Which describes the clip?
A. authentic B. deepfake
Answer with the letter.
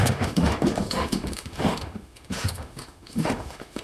B